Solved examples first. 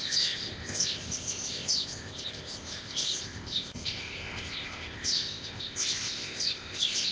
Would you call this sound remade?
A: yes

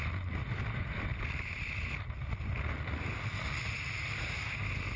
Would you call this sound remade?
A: no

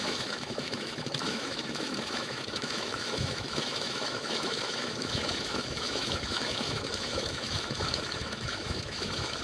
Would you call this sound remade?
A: yes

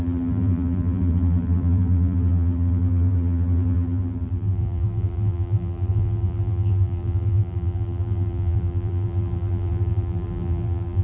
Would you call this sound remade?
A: yes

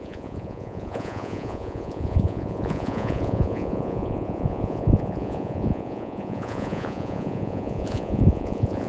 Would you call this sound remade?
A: yes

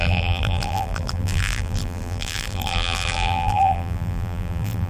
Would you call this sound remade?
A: yes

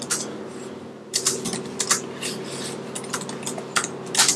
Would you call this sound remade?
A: no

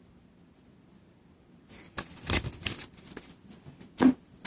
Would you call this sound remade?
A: no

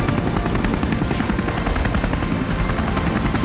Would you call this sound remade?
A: no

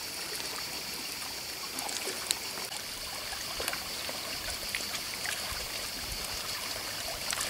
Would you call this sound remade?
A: no